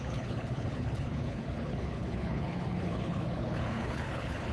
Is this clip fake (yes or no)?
yes